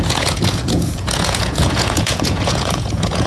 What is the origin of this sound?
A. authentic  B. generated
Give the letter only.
B